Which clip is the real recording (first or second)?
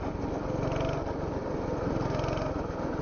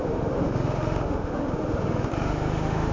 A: first